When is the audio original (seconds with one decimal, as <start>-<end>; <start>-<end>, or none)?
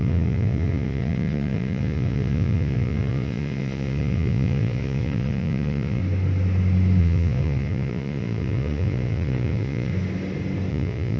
6.0-7.0; 9.9-10.7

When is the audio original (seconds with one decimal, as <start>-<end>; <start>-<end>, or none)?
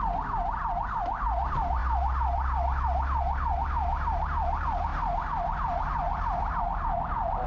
0.0-7.5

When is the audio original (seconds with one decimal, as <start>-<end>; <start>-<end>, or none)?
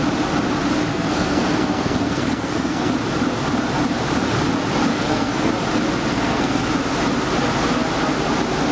0.0-0.9; 2.9-4.9; 5.5-6.1; 6.6-8.7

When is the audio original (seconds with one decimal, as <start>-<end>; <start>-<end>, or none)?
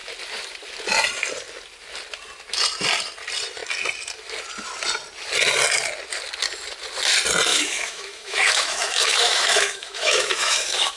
0.0-7.5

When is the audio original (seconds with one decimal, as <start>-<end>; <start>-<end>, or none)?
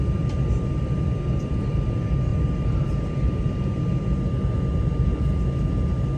0.0-6.2